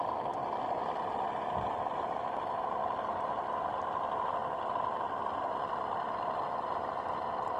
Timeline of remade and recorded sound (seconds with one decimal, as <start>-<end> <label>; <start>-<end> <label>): 0.0-0.4 remade; 0.4-3.8 recorded; 3.8-4.4 remade; 4.4-5.9 recorded; 5.9-7.6 remade